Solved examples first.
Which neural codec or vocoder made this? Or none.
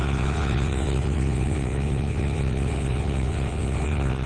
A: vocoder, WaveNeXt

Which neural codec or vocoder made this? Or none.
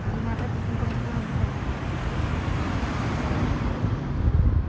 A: none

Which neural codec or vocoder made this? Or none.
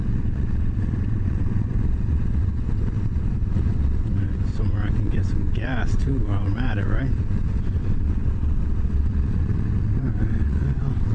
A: vocoder, WaveNeXt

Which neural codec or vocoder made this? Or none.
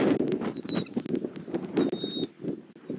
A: none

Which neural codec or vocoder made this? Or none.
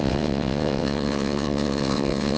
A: vocoder, WaveNeXt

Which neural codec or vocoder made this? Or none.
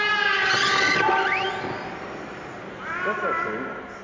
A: none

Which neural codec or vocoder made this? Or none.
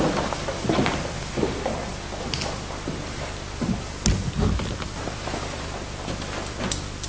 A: none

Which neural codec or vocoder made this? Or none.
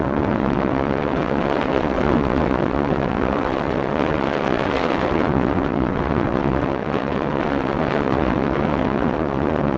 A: vocoder, WaveNeXt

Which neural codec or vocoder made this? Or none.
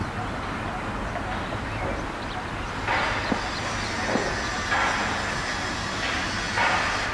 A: none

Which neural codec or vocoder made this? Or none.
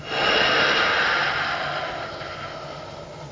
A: none